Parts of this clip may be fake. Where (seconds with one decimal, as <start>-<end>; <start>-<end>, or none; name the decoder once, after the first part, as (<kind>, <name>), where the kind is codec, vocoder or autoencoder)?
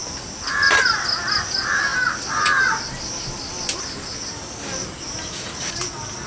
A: none